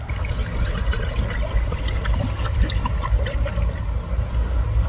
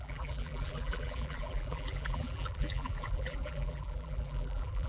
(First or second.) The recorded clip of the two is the first